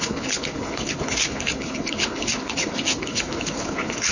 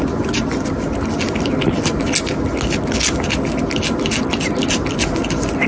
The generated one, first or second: first